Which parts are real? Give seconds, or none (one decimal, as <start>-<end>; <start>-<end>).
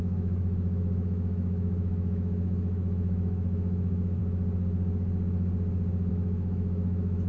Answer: 4.2-6.1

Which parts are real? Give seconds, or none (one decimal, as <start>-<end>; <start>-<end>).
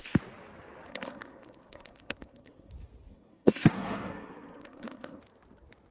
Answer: 0.0-0.9; 2.7-3.1; 5.2-5.9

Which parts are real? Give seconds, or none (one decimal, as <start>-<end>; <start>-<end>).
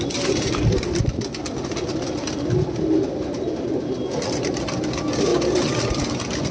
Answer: 0.0-6.5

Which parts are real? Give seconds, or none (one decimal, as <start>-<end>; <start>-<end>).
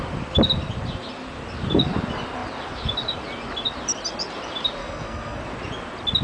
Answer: 0.0-4.8; 5.4-6.2